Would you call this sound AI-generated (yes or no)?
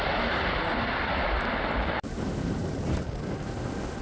no